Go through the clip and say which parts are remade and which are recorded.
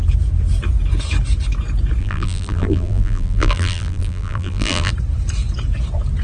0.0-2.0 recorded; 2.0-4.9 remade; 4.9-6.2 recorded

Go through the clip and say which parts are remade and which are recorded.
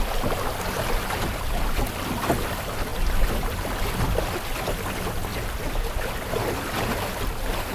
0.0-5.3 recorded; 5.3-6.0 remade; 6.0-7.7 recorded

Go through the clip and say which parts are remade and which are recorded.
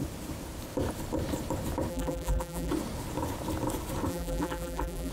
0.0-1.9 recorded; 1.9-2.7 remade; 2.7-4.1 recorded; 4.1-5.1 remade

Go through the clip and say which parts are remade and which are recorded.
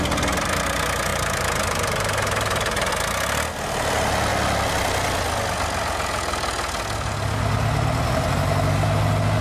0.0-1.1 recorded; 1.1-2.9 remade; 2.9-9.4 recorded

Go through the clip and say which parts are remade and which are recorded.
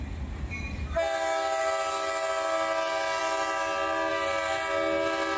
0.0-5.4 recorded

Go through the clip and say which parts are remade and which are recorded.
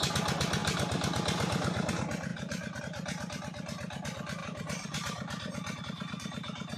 0.0-2.3 recorded; 2.3-2.8 remade; 2.8-4.4 recorded; 4.4-5.8 remade; 5.8-6.8 recorded